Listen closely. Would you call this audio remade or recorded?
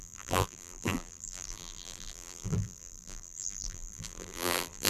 remade